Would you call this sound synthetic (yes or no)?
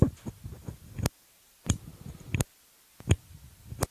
no